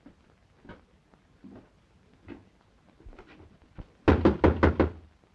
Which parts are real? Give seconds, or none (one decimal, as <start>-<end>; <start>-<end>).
0.0-5.3